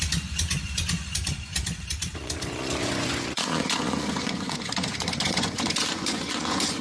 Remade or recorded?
remade